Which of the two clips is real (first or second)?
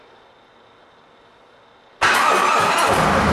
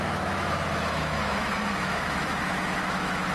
first